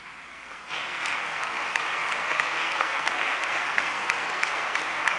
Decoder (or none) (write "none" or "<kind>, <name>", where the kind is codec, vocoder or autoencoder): codec, SNAC